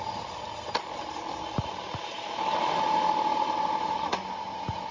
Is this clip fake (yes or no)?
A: no